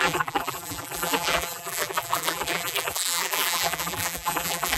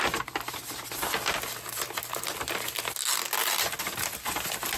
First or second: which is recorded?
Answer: second